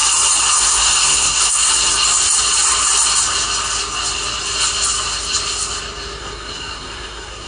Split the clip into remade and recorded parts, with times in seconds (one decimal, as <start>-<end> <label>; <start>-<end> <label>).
0.0-0.6 recorded; 0.6-1.7 remade; 1.7-6.2 recorded; 6.2-7.5 remade